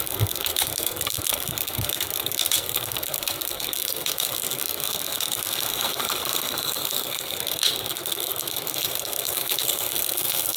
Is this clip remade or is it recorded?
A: remade